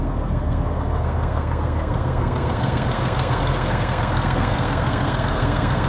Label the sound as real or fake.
fake